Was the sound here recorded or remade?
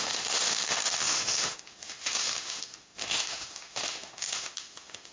remade